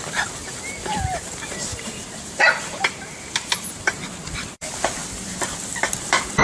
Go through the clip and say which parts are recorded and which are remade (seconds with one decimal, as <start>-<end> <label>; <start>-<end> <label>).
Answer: 0.0-5.0 remade; 5.0-5.6 recorded; 5.6-6.4 remade